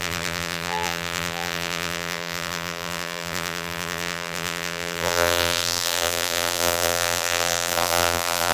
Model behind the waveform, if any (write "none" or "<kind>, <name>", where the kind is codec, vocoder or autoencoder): vocoder, BigVGAN v2